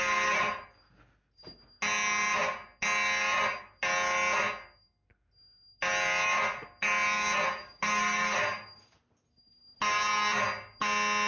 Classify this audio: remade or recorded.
recorded